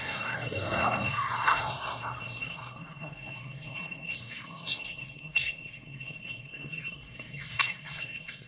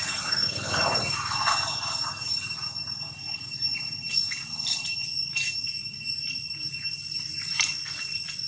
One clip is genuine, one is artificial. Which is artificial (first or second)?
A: first